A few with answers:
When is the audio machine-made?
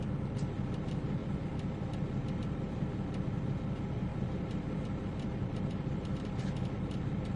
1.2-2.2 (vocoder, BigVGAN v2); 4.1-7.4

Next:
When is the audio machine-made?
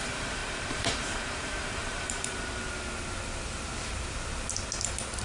0.0-2.6 (vocoder, BigVGAN v2)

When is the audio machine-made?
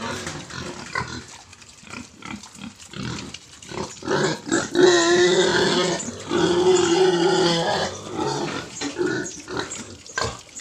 1.5-4.7 (vocoder, BigVGAN v2)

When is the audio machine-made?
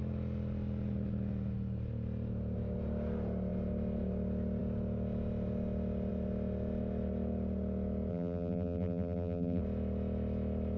8.1-9.6 (vocoder, BigVGAN v2)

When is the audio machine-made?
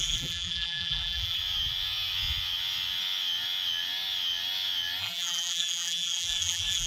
0.0-1.4 (vocoder, BigVGAN v2); 5.0-6.9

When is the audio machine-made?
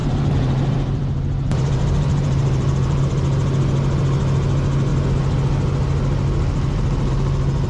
0.0-3.0 (vocoder, BigVGAN v2)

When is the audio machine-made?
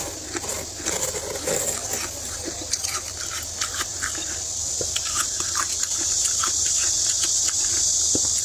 3.6-5.5 (vocoder, BigVGAN v2)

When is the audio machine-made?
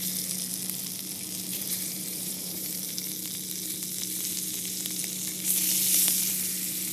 1.5-2.7 (vocoder, BigVGAN v2)